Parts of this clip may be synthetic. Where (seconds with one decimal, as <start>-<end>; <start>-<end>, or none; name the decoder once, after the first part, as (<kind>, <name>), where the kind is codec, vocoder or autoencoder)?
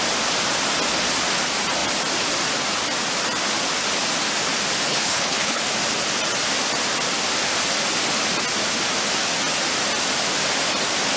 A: 4.9-5.6 (codec, HILCodec)